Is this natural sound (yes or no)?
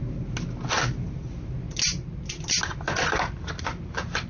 yes